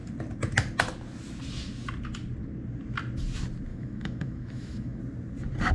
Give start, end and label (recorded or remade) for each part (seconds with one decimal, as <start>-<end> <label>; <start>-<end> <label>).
0.0-3.7 recorded; 3.7-5.0 remade; 5.0-5.7 recorded